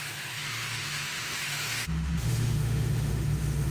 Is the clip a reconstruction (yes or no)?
yes